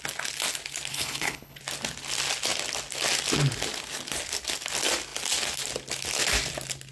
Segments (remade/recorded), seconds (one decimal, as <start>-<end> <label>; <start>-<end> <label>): 0.0-0.9 recorded; 0.9-1.6 remade; 1.6-6.9 recorded

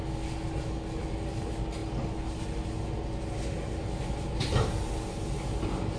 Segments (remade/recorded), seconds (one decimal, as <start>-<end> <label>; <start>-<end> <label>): 0.0-6.0 recorded

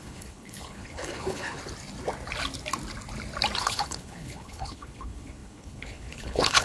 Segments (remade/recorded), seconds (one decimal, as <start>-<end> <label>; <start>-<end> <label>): 0.0-1.6 remade; 1.6-3.6 recorded; 3.6-6.6 remade

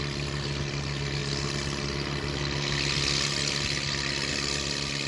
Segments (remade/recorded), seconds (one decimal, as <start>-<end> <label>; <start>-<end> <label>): 0.0-5.1 recorded

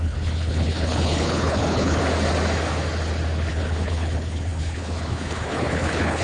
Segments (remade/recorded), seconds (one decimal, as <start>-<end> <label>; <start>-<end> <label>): 0.0-2.0 remade; 2.0-3.5 recorded; 3.5-6.2 remade